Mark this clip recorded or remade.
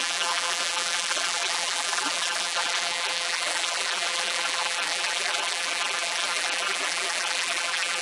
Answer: remade